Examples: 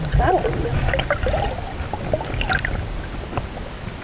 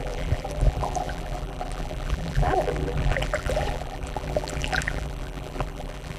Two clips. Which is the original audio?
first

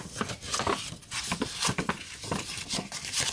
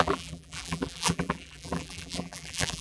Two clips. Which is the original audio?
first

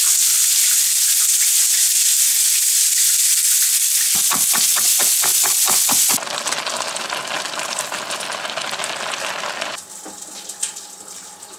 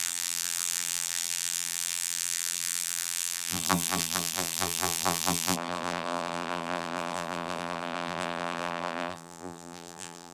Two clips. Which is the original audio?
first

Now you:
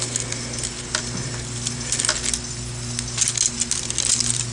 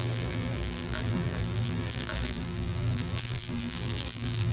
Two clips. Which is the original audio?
first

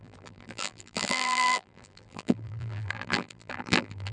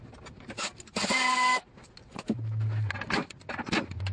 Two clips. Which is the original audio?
second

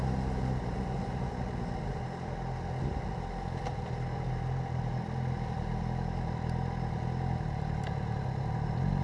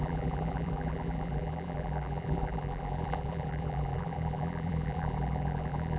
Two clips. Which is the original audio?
first